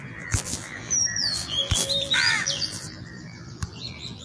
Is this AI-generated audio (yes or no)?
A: yes